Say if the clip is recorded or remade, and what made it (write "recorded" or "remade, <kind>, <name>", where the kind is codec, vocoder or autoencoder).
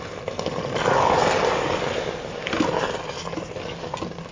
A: recorded